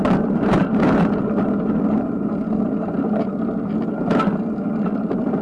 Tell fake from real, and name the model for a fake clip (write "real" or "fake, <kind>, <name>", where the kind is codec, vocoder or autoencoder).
real